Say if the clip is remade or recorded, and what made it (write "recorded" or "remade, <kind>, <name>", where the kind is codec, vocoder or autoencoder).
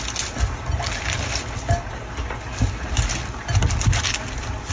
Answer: recorded